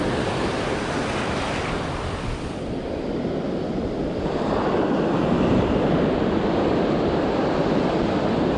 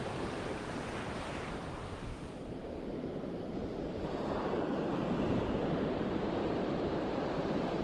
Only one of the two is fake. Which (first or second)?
second